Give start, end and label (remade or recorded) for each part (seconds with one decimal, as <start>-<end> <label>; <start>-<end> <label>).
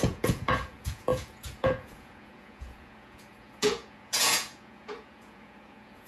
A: 0.0-6.1 remade